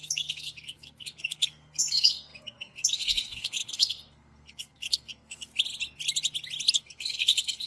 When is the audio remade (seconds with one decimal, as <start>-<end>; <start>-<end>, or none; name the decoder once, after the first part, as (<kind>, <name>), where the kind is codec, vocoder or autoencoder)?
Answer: 0.0-5.5 (codec, SNAC); 6.7-7.7